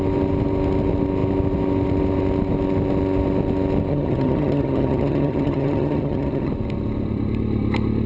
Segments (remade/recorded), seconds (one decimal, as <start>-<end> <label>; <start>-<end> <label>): 0.0-3.9 recorded; 3.9-6.5 remade; 6.5-8.1 recorded

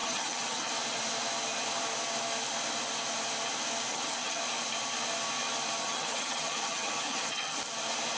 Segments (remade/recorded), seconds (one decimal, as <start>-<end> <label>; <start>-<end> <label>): 0.0-0.7 remade; 0.7-3.9 recorded; 3.9-4.4 remade; 4.4-5.8 recorded; 5.8-7.6 remade; 7.6-8.2 recorded

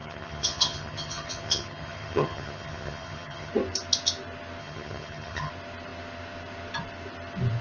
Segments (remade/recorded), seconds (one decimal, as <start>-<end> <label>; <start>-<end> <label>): 0.0-3.5 remade; 3.5-4.6 recorded; 4.6-5.5 remade; 5.5-7.6 recorded

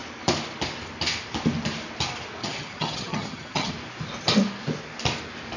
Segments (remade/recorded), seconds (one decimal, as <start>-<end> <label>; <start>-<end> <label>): 0.0-2.4 recorded; 2.4-3.7 remade; 3.7-5.6 recorded